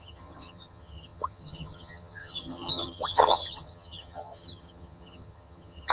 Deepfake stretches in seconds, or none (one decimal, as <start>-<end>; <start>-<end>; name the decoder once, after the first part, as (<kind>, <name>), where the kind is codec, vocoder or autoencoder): 0.0-5.9 (vocoder, HiFi-GAN)